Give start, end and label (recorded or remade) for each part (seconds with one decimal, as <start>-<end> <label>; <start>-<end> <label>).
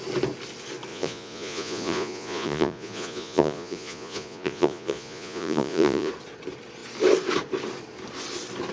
0.0-0.9 recorded; 0.9-6.1 remade; 6.1-8.7 recorded